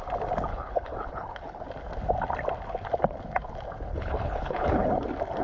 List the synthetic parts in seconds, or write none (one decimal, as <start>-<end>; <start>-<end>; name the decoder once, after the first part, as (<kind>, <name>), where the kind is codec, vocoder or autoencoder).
0.5-1.6 (codec, HILCodec); 3.9-4.9